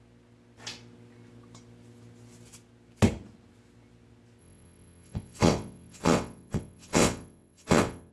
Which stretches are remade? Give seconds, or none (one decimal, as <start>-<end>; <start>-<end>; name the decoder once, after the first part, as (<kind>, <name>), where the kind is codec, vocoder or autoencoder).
4.4-8.1 (vocoder, WaveNeXt)